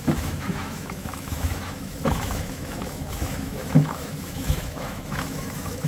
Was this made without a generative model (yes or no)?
no